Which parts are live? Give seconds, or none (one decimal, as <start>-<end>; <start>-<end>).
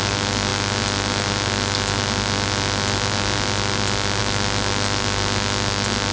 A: 0.0-6.1